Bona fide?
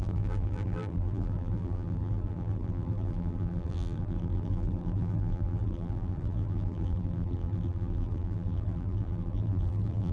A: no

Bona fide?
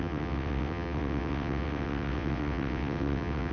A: no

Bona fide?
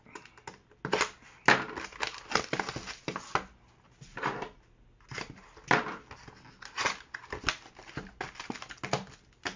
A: yes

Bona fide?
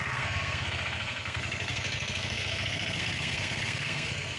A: no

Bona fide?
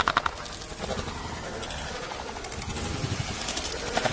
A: yes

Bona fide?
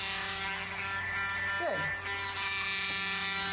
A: yes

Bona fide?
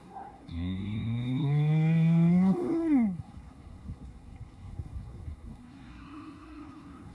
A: no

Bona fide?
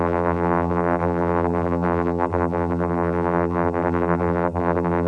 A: no